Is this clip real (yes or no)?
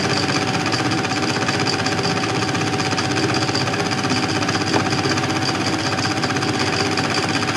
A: yes